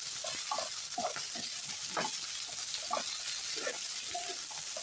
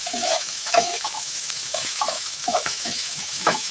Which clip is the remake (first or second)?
second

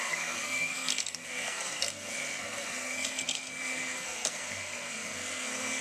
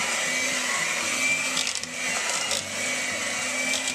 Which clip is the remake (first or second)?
first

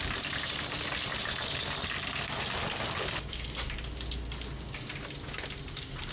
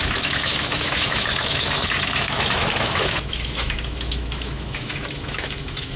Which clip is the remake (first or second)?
second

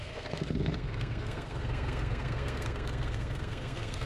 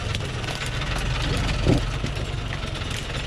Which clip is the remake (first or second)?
first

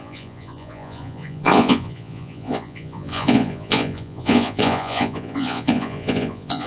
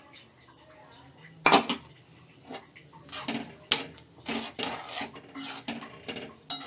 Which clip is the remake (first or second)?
first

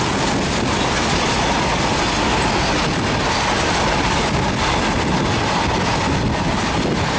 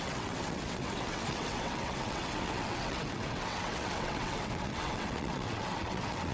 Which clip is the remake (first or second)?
second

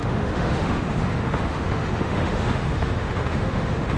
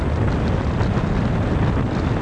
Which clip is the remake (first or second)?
first